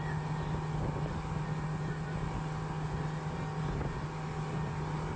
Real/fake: real